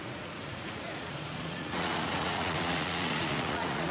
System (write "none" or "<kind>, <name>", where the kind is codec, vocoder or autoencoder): vocoder, Vocos